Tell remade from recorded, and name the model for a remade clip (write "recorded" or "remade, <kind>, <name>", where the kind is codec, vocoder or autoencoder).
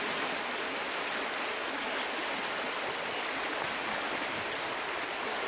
recorded